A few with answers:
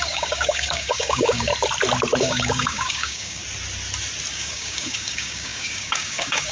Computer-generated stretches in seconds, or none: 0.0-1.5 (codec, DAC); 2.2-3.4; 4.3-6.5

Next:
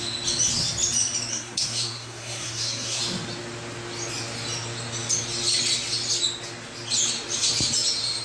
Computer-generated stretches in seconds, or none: 1.3-3.0 (codec, SNAC)

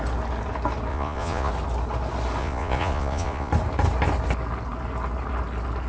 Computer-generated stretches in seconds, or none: 0.9-1.5 (vocoder, Vocos); 2.4-3.5

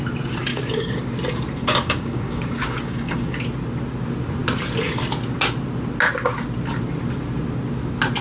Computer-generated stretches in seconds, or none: 0.5-1.0 (codec, DAC); 1.6-3.4

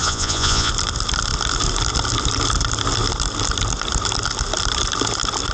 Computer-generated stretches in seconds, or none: 0.0-0.7 (vocoder, Vocos)